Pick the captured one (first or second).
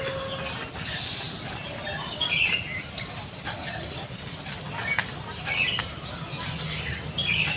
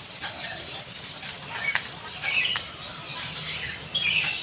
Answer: first